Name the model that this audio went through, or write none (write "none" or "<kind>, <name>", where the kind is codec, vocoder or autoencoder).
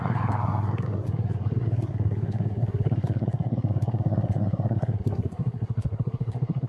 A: codec, SNAC